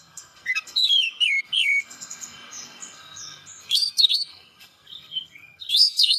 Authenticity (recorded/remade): remade